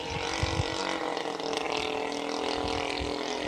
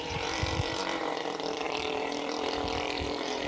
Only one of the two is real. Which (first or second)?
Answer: first